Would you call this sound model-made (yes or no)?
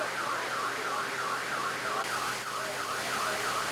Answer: no